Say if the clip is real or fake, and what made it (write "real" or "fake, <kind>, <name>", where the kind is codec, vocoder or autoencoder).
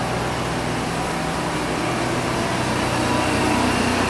real